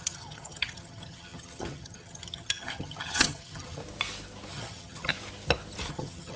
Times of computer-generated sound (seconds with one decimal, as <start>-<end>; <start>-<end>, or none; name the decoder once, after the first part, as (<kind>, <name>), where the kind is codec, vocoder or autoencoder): 0.0-3.8 (vocoder, HiFi-GAN); 4.5-5.1; 5.9-6.4